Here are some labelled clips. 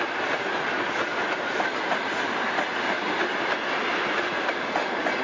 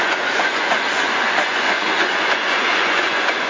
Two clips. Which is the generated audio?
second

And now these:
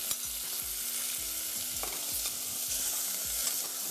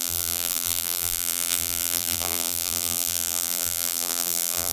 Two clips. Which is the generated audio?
second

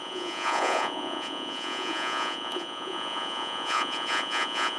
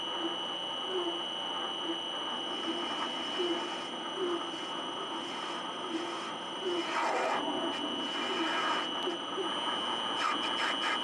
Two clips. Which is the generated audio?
first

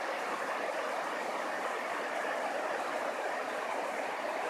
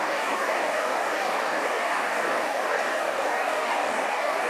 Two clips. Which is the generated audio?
second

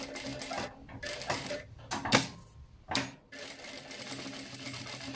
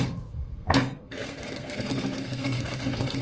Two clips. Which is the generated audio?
second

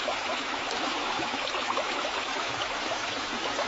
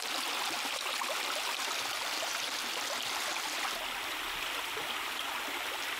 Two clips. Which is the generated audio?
first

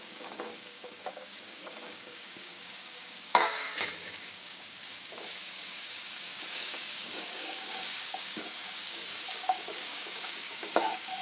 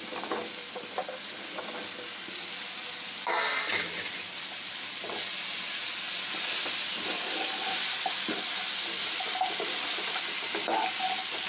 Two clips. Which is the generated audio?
first